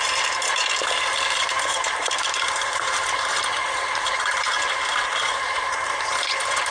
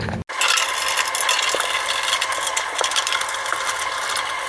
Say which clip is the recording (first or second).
second